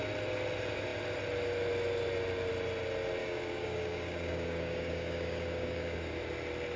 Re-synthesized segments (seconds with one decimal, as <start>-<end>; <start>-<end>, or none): 3.2-6.2

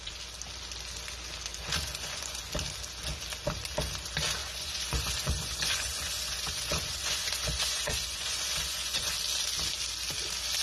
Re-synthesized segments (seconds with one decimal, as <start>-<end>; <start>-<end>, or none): 1.5-2.4; 4.4-9.1

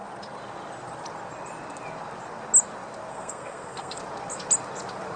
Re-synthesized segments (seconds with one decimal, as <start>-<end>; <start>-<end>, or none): 3.1-4.0